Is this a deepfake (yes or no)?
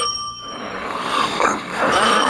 yes